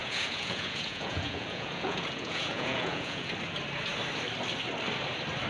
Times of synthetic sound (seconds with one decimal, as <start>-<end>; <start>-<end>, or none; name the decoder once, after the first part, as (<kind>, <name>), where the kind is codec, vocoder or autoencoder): 0.0-3.3 (vocoder, Vocos)

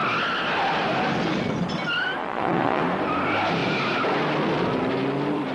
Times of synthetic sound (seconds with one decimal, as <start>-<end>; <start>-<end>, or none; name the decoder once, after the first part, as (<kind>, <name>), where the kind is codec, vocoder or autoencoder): 2.2-2.8 (vocoder, Vocos)

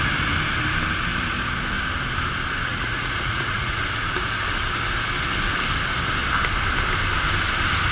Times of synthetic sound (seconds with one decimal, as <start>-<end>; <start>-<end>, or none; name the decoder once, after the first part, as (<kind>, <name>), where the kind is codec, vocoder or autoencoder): 2.7-3.8 (vocoder, Vocos)